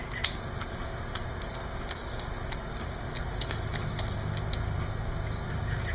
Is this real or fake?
real